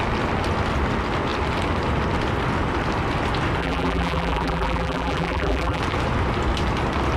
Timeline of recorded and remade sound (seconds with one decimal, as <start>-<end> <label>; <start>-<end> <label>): 0.0-3.6 recorded; 3.6-5.8 remade; 5.8-7.2 recorded